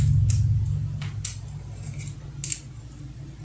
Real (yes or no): yes